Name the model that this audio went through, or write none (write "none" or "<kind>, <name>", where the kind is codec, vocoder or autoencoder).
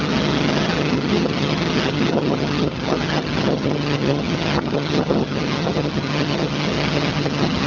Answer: vocoder, HiFi-GAN